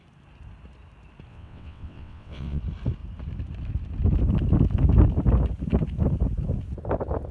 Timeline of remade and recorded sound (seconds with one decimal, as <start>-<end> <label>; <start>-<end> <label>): 0.0-1.3 recorded; 1.3-2.6 remade; 2.6-7.3 recorded